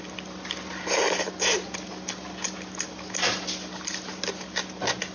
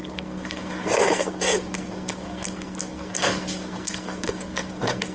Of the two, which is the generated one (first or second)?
second